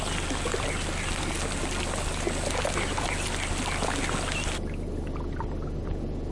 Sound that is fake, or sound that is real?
real